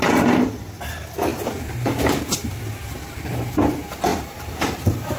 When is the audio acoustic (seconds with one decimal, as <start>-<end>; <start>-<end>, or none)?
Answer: 0.0-1.3; 2.6-4.1